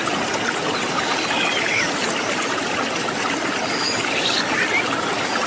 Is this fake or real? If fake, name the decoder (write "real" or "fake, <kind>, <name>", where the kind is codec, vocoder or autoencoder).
real